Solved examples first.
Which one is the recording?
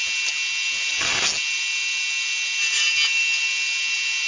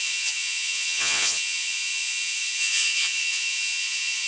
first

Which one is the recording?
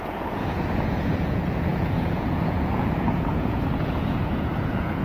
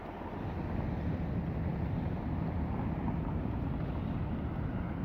second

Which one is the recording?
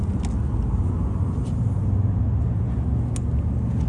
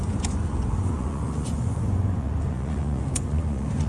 first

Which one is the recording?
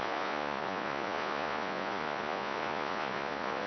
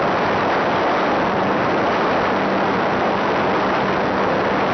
second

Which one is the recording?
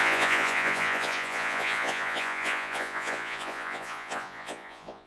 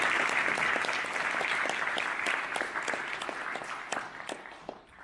second